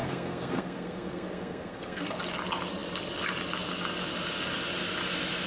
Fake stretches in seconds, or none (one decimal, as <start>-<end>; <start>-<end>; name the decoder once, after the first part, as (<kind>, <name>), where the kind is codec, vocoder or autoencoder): 0.0-2.2 (codec, SNAC)